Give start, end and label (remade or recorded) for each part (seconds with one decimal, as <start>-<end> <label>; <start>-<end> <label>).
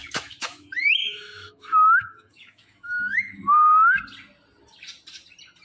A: 0.0-3.4 remade; 3.4-5.6 recorded